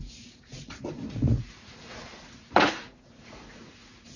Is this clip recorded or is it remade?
remade